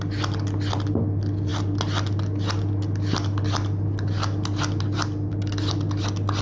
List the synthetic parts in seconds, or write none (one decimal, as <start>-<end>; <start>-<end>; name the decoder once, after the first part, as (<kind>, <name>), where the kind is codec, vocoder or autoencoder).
none